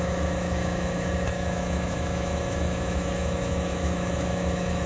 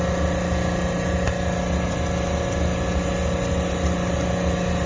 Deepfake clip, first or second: first